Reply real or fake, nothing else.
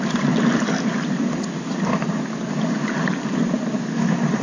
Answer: real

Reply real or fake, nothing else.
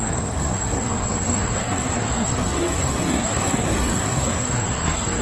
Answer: fake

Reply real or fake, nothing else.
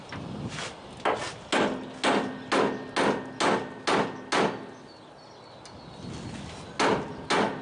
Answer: real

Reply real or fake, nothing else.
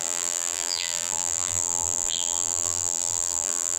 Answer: fake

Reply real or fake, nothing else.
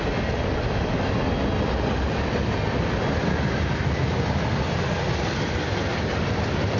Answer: real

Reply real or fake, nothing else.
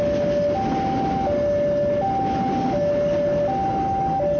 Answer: real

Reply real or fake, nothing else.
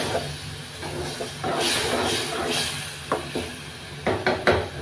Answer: real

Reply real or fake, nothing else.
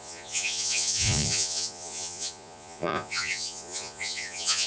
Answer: fake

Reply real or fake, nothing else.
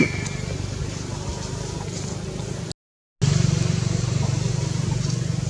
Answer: real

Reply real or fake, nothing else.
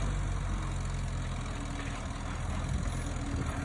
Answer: real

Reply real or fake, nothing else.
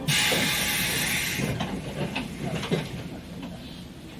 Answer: real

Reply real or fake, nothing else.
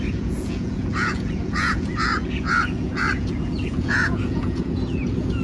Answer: fake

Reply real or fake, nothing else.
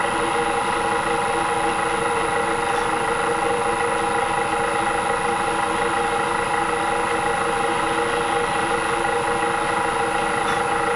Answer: real